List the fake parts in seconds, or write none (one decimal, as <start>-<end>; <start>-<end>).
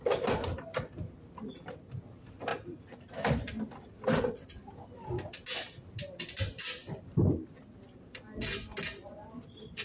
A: 2.5-4.7; 6.8-7.6